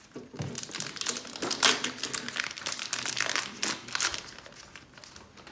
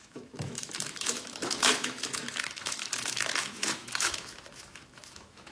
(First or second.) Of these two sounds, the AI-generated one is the second